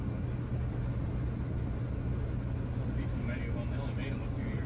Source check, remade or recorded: recorded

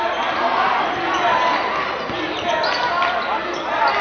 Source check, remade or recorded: recorded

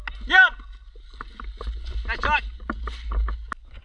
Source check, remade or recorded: recorded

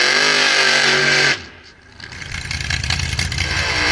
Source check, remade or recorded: recorded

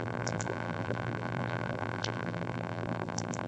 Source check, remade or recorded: remade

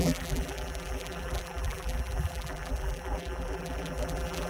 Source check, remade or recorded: remade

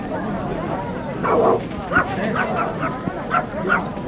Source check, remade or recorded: recorded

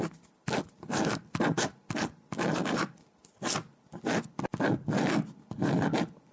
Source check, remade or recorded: recorded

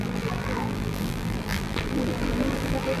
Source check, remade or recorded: remade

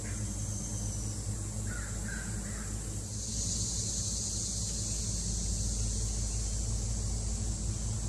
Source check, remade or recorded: recorded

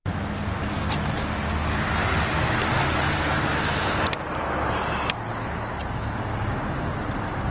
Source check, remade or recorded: recorded